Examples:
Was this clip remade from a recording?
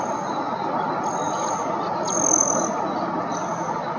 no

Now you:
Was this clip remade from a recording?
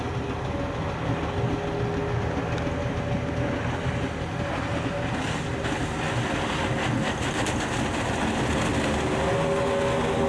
no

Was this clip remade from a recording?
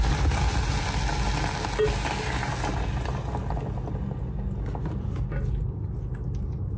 no